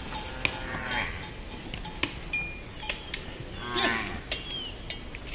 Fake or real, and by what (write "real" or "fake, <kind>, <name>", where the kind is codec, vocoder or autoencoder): real